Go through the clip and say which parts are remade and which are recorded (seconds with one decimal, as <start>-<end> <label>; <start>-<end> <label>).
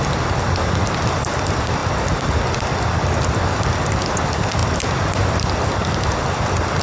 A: 0.0-6.8 recorded